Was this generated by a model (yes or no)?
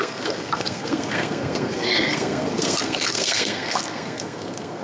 yes